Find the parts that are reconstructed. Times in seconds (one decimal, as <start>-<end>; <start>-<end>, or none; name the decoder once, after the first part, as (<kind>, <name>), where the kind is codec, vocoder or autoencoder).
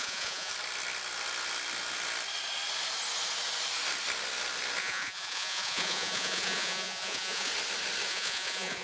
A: 0.0-0.5 (vocoder, Vocos); 4.8-7.5; 8.1-8.8